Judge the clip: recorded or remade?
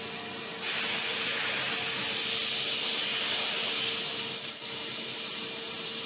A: recorded